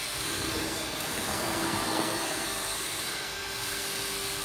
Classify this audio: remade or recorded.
remade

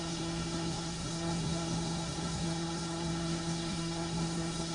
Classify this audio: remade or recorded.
remade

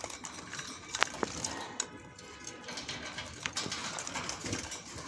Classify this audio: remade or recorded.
recorded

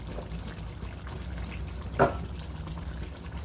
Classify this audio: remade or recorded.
recorded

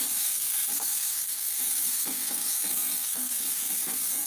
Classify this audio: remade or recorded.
remade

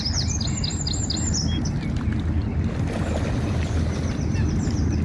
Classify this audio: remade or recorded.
recorded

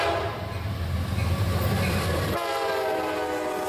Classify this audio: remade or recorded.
recorded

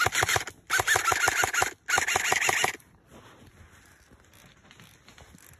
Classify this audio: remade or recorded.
recorded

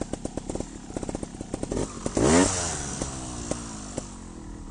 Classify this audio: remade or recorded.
recorded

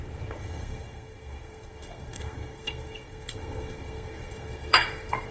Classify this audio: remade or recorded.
remade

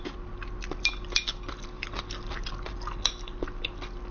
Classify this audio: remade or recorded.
recorded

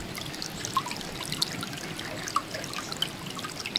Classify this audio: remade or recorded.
recorded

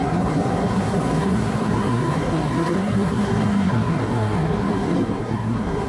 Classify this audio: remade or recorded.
remade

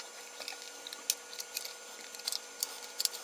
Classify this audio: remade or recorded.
recorded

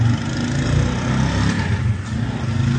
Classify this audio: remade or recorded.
recorded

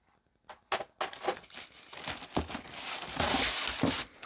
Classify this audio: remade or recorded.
recorded